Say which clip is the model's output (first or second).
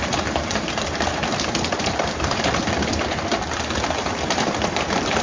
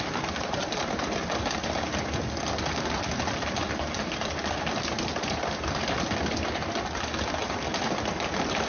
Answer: first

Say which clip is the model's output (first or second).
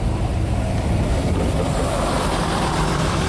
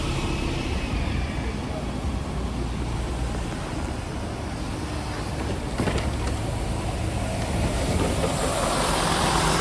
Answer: first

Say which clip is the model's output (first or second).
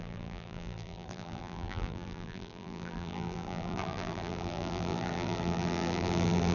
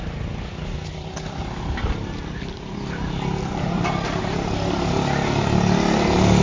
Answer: first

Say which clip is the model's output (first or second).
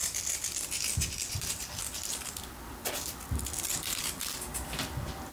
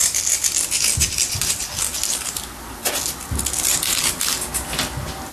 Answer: first